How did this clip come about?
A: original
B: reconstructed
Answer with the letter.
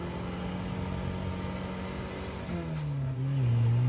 A